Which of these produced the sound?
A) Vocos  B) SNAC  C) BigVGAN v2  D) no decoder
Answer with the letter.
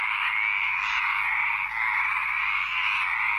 D